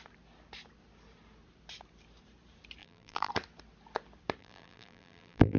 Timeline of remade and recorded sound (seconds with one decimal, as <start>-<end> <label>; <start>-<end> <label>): 0.0-2.8 recorded; 2.8-3.3 remade; 3.3-4.4 recorded; 4.4-5.6 remade